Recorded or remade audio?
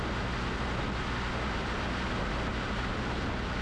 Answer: recorded